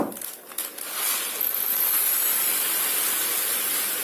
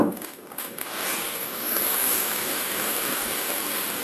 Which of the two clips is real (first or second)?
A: first